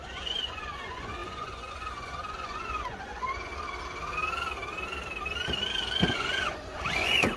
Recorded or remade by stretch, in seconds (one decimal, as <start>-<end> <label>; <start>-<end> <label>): 0.0-3.5 remade; 3.5-6.1 recorded; 6.1-7.4 remade